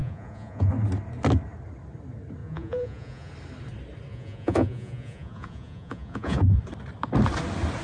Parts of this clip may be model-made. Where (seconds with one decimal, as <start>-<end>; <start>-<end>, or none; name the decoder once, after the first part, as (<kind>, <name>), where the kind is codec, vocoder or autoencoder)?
0.0-0.7 (vocoder, Vocos); 2.4-3.3; 4.1-6.6